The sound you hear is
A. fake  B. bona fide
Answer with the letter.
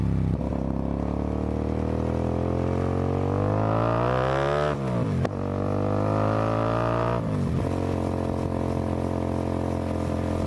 B